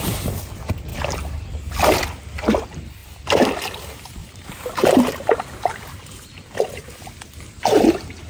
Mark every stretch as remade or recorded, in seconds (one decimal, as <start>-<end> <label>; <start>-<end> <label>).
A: 0.0-4.2 recorded; 4.2-6.3 remade; 6.3-8.3 recorded